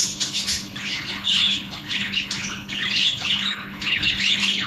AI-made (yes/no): yes